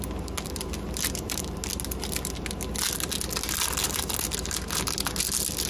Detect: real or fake real